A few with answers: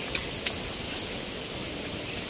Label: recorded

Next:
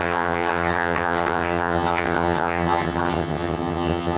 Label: remade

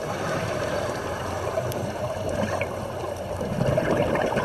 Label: remade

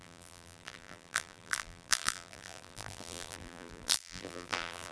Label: remade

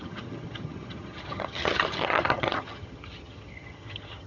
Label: remade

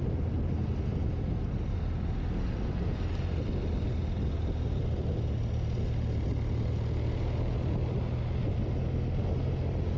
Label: recorded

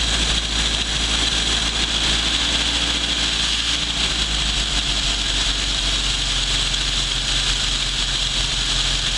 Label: recorded